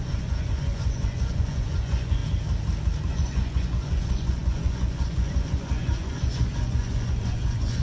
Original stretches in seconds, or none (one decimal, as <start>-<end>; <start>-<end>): 2.2-3.1